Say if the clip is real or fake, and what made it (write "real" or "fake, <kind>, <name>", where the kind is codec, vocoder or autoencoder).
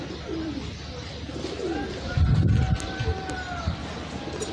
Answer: real